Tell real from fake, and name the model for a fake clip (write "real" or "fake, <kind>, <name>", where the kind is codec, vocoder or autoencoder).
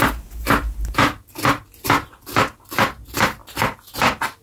real